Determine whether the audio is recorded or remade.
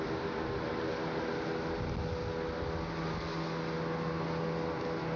recorded